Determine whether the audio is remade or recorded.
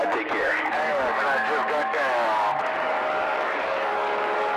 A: remade